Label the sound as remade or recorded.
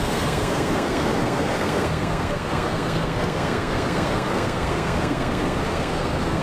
remade